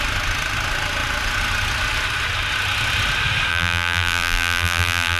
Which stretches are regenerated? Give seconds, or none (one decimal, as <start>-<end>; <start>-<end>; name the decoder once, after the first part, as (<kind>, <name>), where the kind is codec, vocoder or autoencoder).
3.5-5.2 (vocoder, BigVGAN v2)